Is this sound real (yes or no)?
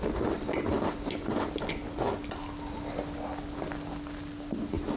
yes